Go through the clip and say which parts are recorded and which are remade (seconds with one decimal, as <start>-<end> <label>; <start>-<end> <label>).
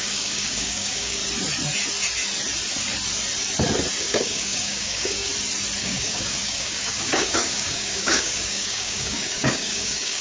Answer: 0.0-1.2 remade; 1.2-4.0 recorded; 4.0-5.3 remade; 5.3-5.8 recorded; 5.8-10.2 remade